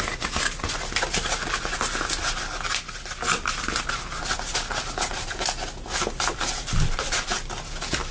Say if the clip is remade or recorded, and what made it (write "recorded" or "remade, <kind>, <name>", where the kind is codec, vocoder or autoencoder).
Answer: recorded